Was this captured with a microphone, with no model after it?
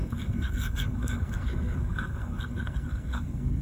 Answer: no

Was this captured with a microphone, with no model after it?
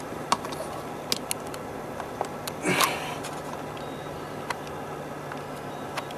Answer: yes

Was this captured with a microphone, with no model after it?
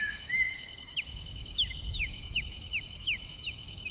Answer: no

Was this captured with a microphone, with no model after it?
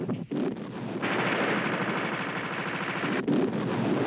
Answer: yes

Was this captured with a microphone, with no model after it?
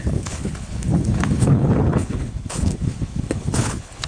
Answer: no